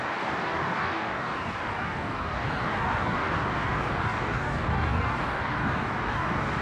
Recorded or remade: remade